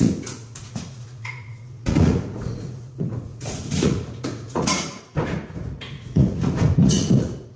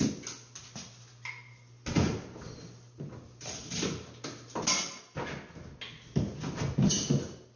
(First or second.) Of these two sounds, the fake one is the first